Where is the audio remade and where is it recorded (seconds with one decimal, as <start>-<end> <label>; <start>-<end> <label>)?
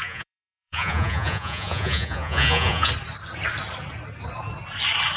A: 0.0-2.9 remade; 2.9-5.2 recorded